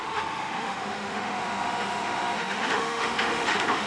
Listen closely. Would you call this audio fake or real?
fake